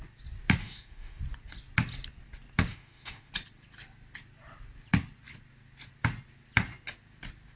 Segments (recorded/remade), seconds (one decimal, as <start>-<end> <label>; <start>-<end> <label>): 0.0-0.6 recorded; 0.6-1.2 remade; 1.2-2.7 recorded; 2.7-3.3 remade; 3.3-7.6 recorded